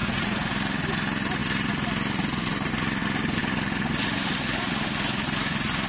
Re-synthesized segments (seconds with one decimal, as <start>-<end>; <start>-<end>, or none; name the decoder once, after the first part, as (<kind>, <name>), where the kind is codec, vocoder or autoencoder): 0.0-0.5 (vocoder, Vocos)